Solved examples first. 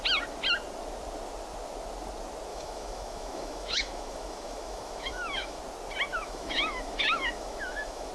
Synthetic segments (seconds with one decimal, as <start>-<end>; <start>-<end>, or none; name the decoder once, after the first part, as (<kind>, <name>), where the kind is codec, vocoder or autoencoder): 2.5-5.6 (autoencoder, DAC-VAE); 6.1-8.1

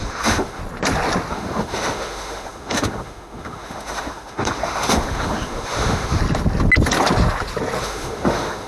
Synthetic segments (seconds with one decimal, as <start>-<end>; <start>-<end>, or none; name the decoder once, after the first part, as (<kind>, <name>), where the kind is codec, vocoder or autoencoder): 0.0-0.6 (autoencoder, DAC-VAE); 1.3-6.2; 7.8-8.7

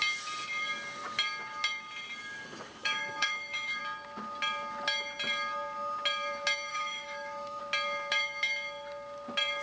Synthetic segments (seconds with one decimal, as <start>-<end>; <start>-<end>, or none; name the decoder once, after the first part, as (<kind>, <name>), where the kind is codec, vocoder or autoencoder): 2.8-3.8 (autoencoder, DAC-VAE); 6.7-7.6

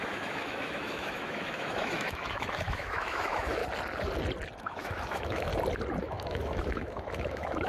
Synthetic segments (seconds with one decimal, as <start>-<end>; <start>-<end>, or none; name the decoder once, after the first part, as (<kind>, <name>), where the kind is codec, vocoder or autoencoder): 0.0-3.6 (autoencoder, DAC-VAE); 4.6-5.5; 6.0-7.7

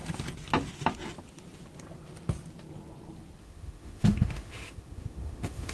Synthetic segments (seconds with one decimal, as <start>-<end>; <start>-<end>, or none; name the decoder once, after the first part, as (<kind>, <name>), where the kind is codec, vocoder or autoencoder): 3.4-5.7 (autoencoder, DAC-VAE)

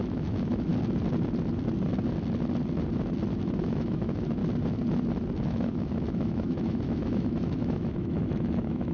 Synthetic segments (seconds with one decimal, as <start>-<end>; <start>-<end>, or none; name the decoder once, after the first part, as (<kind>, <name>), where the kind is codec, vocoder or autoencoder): 0.0-0.7 (autoencoder, DAC-VAE); 3.3-4.4; 5.5-8.9

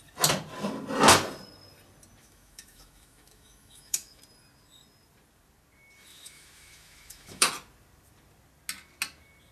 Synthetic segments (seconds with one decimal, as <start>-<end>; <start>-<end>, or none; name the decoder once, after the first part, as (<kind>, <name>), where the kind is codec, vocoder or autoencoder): 2.2-4.2 (autoencoder, DAC-VAE); 6.1-7.5

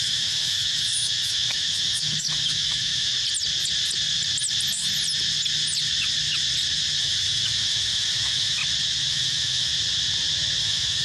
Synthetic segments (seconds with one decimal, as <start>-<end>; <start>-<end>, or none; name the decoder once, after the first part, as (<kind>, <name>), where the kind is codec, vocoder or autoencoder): 0.0-3.1 (autoencoder, DAC-VAE); 7.0-8.6; 9.1-9.7; 10.6-11.0